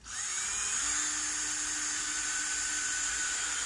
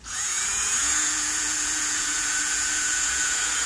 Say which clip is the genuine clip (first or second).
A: first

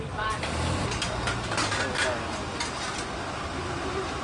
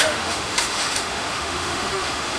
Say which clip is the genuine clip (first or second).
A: first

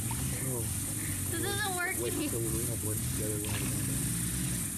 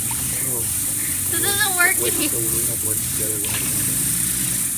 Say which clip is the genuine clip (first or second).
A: first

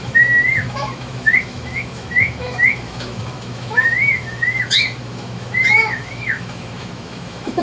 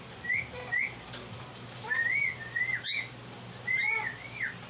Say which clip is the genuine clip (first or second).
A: second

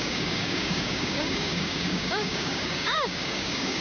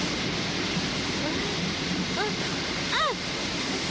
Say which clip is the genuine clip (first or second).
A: second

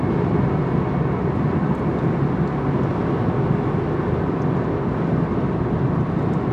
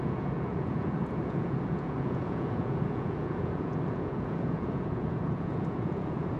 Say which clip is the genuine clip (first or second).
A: first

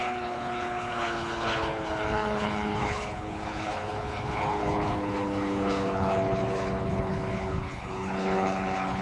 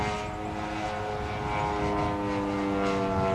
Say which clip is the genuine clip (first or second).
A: second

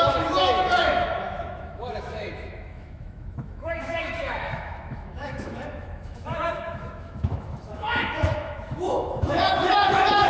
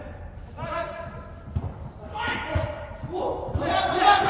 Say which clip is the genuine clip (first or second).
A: second